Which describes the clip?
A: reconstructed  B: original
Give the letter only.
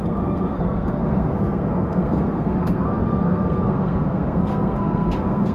A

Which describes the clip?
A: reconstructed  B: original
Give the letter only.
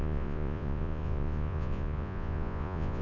A